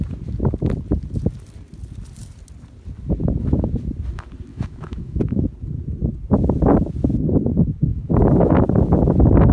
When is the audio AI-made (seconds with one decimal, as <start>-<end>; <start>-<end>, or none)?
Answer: 4.5-5.2; 7.9-8.5